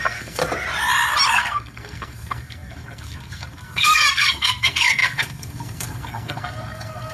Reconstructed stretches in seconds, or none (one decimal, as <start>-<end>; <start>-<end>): 0.0-0.4; 1.3-7.1